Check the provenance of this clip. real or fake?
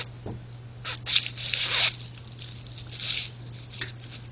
real